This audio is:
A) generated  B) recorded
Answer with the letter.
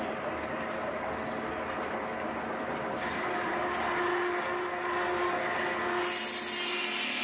B